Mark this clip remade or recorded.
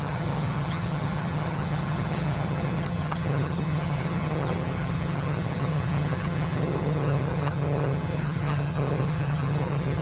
remade